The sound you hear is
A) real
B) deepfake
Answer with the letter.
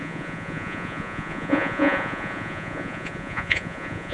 B